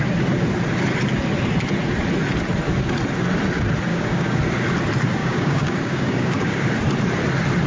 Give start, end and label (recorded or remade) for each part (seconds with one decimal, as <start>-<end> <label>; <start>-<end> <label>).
0.0-3.9 recorded; 3.9-4.4 remade; 4.4-5.2 recorded; 5.2-6.7 remade; 6.7-7.7 recorded